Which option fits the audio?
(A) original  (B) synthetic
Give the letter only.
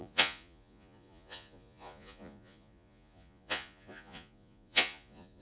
B